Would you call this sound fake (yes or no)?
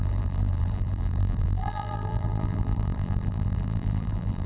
yes